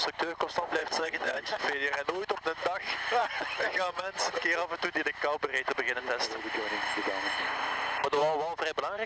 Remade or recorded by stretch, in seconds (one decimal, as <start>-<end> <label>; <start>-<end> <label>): 0.0-0.8 recorded; 0.8-1.6 remade; 1.6-3.2 recorded; 3.2-4.3 remade; 4.3-9.1 recorded